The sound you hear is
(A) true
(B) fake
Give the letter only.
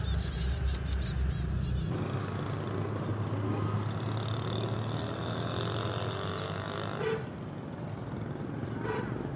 A